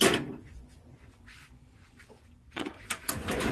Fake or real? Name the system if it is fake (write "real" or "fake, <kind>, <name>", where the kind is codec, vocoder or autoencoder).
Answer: fake, vocoder, Vocos